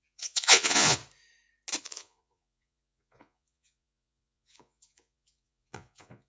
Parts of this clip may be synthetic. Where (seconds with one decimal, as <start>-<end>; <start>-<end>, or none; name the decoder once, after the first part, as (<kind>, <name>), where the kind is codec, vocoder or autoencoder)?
0.0-1.0 (vocoder, Vocos); 1.8-6.3